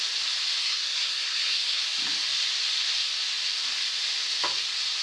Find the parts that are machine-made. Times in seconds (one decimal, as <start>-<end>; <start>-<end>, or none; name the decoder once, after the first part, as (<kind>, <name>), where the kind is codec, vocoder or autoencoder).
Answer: 0.6-1.8 (codec, SNAC)